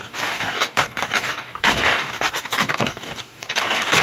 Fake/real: fake